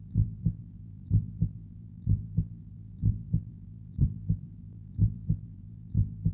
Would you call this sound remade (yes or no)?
yes